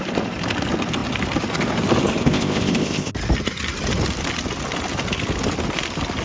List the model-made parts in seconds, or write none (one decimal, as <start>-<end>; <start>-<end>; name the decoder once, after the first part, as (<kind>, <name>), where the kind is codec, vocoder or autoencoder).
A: 2.2-3.1 (codec, ZipCodec)